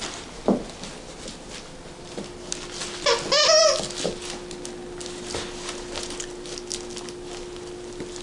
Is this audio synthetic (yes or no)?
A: no